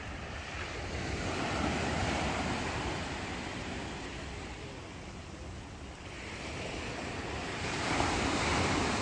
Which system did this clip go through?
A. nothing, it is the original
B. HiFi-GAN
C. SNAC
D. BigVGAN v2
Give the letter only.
D